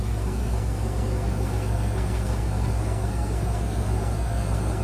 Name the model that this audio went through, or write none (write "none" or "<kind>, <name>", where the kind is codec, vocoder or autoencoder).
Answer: codec, SNAC